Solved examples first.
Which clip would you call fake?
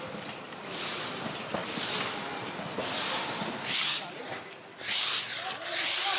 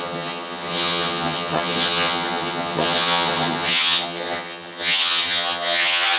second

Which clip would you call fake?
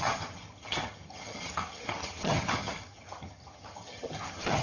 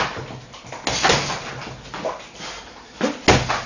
first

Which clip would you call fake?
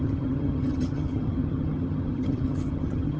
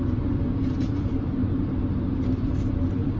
first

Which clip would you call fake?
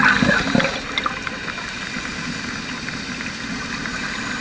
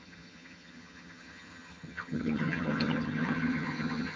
second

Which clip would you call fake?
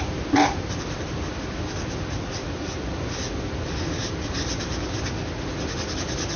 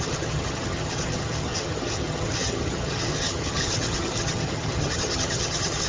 second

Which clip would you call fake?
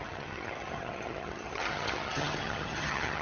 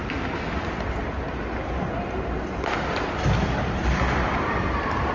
first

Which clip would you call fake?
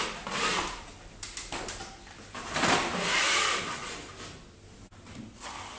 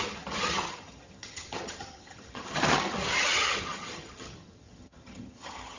second